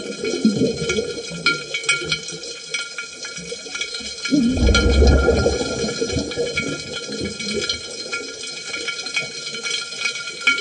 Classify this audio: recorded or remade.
recorded